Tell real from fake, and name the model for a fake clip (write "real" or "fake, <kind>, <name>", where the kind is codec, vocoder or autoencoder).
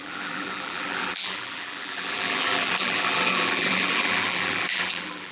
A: fake, vocoder, BigVGAN v2